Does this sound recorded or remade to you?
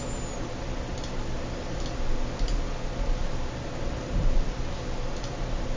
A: recorded